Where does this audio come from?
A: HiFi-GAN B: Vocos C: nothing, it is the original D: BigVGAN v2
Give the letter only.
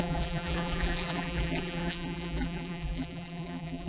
D